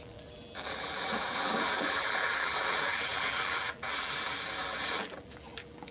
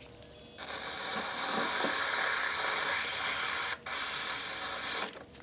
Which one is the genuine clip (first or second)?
second